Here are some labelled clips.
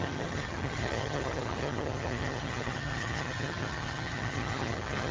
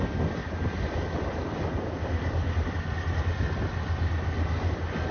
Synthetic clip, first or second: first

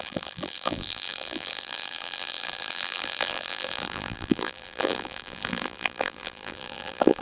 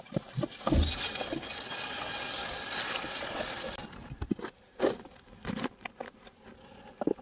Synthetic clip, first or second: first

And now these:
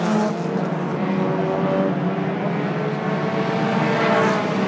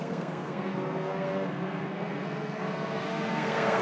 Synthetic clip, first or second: second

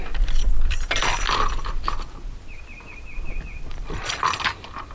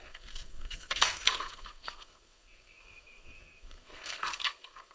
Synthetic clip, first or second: second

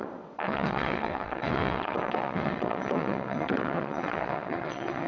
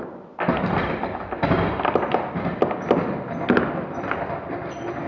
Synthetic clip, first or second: first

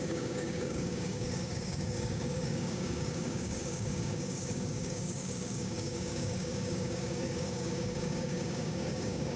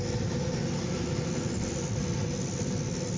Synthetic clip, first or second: first